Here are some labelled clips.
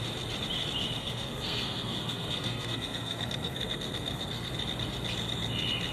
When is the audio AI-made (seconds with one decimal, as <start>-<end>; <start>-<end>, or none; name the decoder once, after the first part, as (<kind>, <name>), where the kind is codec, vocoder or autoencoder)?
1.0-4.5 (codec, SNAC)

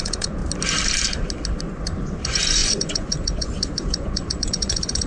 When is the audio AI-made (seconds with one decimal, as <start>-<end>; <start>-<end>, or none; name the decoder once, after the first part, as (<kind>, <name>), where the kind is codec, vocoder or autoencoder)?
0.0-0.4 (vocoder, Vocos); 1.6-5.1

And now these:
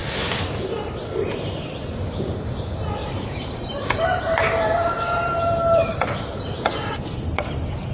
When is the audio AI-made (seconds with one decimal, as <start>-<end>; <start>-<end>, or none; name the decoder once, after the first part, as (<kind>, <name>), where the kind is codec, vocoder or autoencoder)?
3.0-6.1 (vocoder, BigVGAN v2)

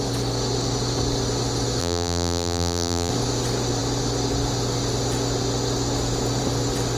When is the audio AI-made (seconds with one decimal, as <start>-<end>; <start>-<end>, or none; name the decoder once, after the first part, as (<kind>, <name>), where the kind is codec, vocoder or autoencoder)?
1.8-3.1 (vocoder, BigVGAN v2)

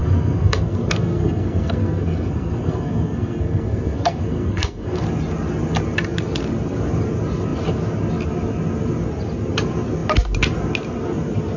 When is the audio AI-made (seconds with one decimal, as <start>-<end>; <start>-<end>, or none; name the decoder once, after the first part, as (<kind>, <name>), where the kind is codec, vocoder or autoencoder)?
0.0-5.0 (codec, SNAC)